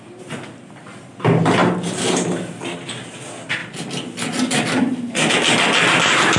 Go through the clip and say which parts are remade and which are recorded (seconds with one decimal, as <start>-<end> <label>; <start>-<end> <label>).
0.0-1.6 recorded; 1.6-2.8 remade; 2.8-3.6 recorded; 3.6-5.3 remade; 5.3-6.4 recorded